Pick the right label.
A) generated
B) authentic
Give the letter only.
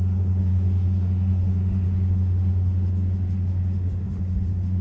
A